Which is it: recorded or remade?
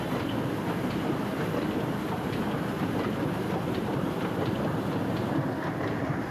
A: remade